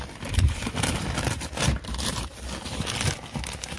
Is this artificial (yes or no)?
no